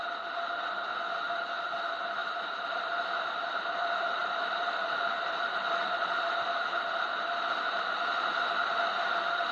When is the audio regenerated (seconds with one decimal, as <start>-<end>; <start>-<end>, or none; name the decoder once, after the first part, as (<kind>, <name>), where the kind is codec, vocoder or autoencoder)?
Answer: 2.2-3.1 (vocoder, BigVGAN v2); 4.2-7.9